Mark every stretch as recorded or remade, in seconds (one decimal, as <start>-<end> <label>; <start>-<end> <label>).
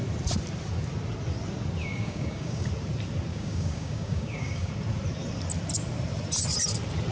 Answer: 0.0-1.8 recorded; 1.8-2.7 remade; 2.7-3.3 recorded; 3.3-4.7 remade; 4.7-7.1 recorded